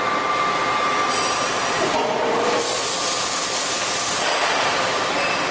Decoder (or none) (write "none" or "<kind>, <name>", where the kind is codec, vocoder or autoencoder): vocoder, BigVGAN v2